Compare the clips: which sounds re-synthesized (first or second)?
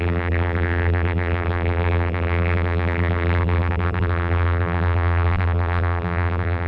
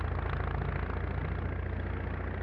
first